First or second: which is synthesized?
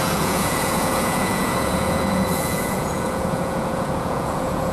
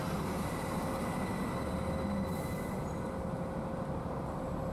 first